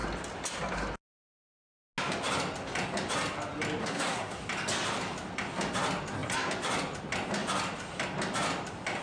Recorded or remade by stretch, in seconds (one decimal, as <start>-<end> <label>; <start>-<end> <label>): 0.0-3.8 recorded; 3.8-4.4 remade; 4.4-9.0 recorded